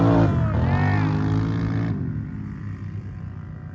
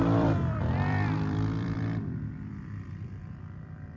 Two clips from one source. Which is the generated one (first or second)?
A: second